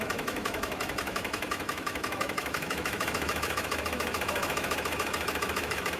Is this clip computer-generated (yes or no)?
yes